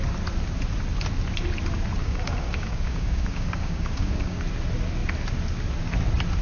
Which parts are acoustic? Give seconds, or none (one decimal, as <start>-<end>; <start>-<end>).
0.0-2.0; 4.4-6.4